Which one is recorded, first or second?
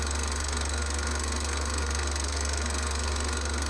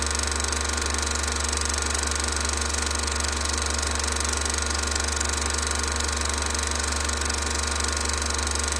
second